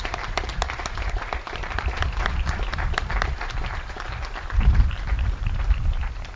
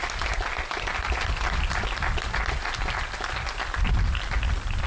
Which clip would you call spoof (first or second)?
first